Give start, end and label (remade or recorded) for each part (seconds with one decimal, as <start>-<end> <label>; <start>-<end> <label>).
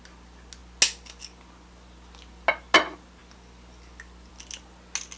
0.0-5.2 recorded